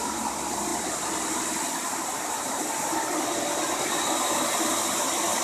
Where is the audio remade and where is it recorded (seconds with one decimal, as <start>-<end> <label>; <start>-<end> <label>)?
0.0-5.4 remade